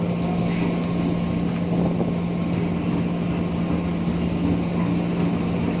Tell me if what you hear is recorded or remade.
recorded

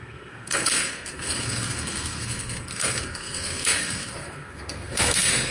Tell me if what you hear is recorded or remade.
remade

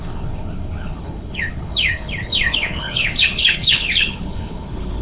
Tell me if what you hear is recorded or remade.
remade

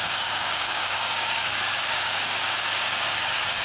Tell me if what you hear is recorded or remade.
remade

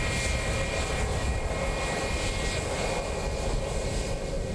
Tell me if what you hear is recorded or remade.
recorded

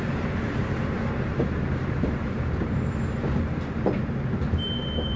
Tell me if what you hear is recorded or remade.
remade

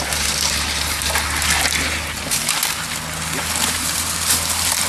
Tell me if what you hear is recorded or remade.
recorded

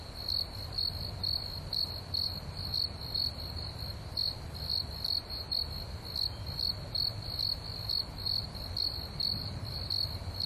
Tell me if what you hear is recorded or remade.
recorded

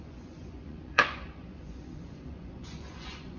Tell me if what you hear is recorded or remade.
remade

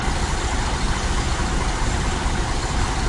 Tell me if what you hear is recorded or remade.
recorded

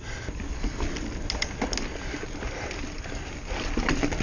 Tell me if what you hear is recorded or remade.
recorded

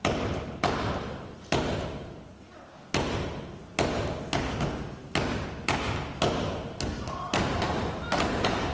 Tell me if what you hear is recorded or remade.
recorded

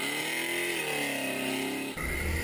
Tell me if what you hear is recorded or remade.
recorded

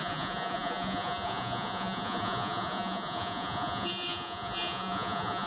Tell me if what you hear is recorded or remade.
remade